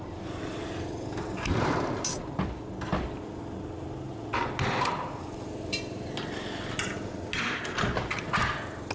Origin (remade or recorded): recorded